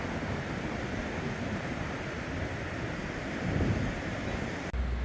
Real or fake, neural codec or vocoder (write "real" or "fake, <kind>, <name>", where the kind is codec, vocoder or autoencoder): real